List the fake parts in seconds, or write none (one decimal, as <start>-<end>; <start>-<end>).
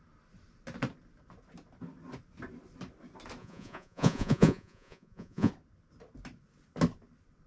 3.4-5.5